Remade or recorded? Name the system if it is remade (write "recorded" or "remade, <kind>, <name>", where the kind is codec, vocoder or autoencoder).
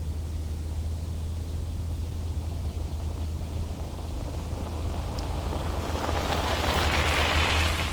recorded